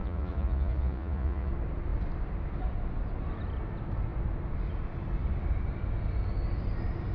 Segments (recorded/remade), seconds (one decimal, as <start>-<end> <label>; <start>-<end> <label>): 0.0-1.5 remade; 1.5-7.1 recorded